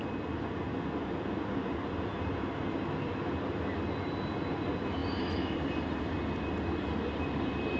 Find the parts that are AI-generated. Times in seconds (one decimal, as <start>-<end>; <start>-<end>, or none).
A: none